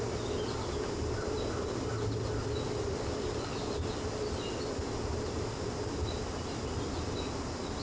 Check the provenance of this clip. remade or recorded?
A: recorded